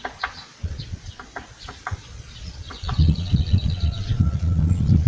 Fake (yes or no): yes